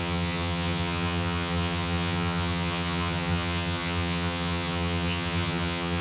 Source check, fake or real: fake